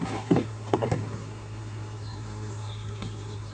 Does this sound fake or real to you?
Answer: fake